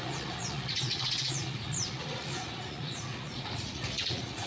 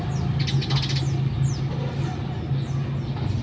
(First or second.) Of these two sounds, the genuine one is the second